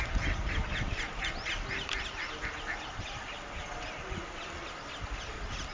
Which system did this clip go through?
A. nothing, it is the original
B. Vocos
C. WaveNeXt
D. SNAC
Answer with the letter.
A